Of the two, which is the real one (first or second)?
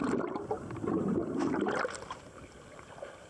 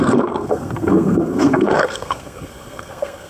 first